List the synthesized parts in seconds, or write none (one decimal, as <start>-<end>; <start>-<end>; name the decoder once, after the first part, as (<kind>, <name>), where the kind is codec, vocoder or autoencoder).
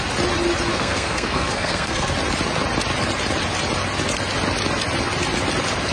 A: 0.7-2.1 (codec, SNAC)